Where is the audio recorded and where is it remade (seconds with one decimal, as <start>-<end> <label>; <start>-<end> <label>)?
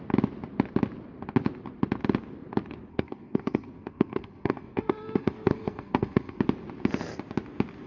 0.0-2.9 recorded; 2.9-6.4 remade; 6.4-7.9 recorded